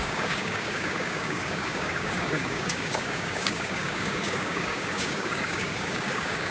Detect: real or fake fake